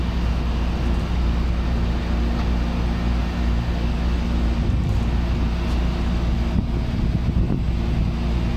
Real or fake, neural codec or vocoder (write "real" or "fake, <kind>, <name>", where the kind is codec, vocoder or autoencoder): real